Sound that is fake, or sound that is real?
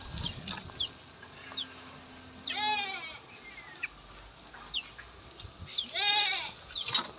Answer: real